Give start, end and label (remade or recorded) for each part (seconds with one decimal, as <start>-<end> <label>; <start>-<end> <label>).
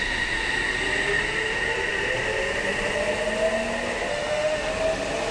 0.0-4.1 recorded; 4.1-4.7 remade; 4.7-5.3 recorded